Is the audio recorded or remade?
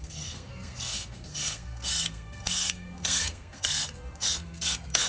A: remade